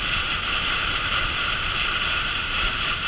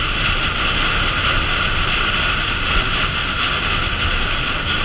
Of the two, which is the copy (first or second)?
first